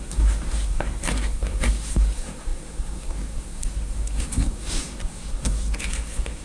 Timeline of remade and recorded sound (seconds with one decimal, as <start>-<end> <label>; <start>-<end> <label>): 0.0-6.4 remade